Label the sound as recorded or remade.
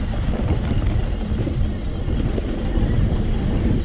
recorded